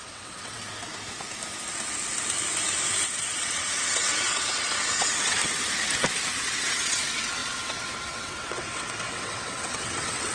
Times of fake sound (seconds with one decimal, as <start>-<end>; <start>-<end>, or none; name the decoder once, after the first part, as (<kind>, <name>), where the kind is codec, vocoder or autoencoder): 0.0-0.6 (vocoder, WaveNeXt); 2.9-5.4; 6.4-10.3